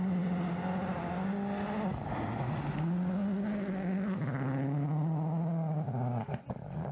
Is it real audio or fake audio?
real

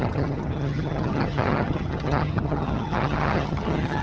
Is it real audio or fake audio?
fake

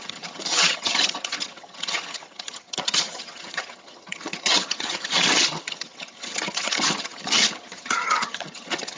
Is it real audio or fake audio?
fake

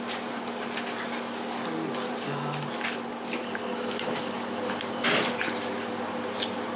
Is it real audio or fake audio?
real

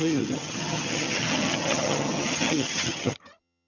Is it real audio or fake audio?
fake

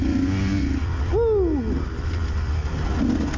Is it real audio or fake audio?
real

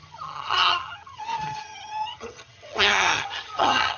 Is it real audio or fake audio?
fake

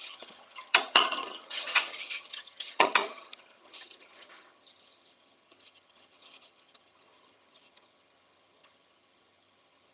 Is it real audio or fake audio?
fake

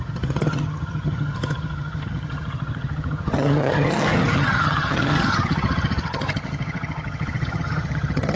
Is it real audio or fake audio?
fake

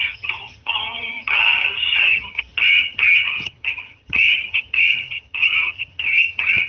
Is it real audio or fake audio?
fake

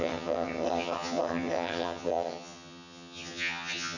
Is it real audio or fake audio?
fake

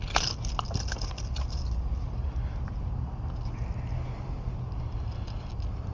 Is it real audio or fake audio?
real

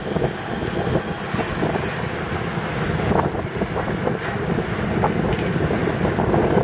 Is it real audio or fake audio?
real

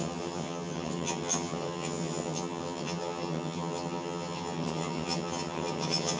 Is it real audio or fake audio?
fake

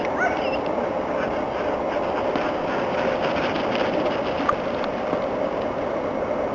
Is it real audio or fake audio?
real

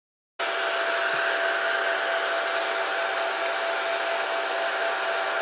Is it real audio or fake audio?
real